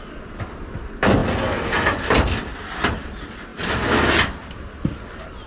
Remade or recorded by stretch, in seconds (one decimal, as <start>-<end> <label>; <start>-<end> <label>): 0.0-5.5 recorded